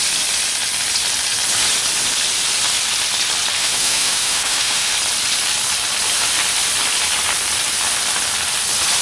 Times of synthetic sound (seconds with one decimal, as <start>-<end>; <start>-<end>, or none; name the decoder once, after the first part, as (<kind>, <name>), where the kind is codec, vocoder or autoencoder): 3.6-4.9 (autoencoder, DAC-VAE)